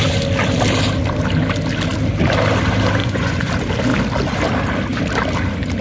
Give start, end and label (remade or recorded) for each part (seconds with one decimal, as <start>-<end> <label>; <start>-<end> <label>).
0.0-3.0 recorded; 3.0-3.5 remade; 3.5-5.8 recorded